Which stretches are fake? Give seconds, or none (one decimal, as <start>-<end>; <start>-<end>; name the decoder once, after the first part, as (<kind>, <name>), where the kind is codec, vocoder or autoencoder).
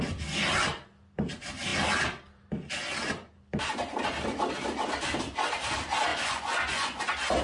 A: 6.1-7.0 (vocoder, Vocos)